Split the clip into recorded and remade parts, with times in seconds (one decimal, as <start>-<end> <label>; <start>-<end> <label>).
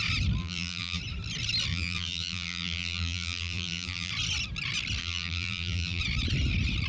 0.0-0.4 recorded; 0.4-1.0 remade; 1.0-1.7 recorded; 1.7-4.1 remade; 4.1-5.0 recorded; 5.0-6.0 remade; 6.0-6.9 recorded